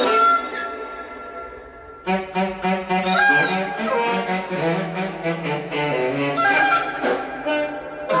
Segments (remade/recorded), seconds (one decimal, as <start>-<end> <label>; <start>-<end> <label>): 0.0-4.1 recorded; 4.1-7.5 remade; 7.5-8.2 recorded